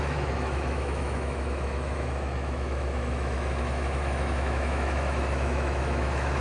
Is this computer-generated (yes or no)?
yes